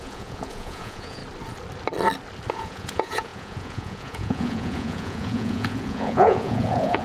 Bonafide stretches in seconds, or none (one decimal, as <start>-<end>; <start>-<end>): 1.2-2.5